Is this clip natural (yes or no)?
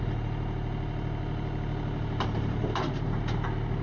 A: yes